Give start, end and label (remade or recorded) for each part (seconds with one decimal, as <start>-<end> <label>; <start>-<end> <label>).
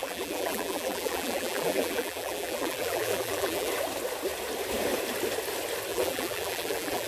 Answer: 0.0-3.7 remade; 3.7-5.9 recorded; 5.9-7.1 remade